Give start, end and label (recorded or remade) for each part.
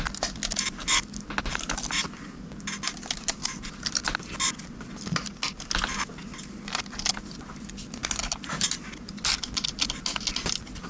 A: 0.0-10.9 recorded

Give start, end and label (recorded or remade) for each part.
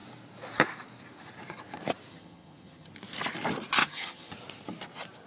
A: 0.0-2.1 recorded; 2.1-2.9 remade; 2.9-3.8 recorded; 3.8-4.3 remade; 4.3-5.3 recorded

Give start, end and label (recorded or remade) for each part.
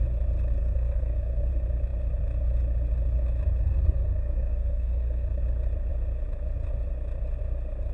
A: 0.0-0.6 recorded; 0.6-1.5 remade; 1.5-3.6 recorded; 3.6-5.4 remade; 5.4-7.9 recorded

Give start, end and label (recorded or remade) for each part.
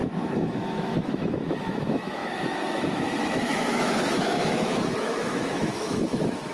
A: 0.0-6.5 remade